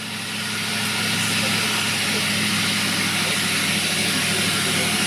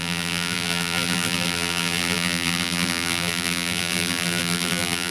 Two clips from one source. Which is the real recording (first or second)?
first